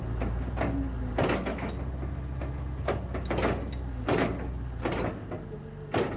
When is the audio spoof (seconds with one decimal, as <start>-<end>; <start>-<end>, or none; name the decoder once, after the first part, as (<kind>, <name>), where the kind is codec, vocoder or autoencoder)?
none